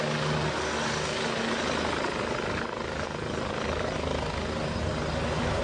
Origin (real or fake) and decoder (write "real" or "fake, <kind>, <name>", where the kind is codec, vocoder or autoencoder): real